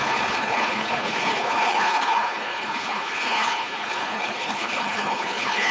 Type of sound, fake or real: fake